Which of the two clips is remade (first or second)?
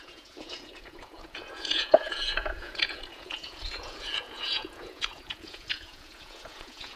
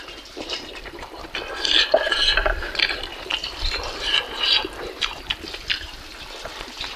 first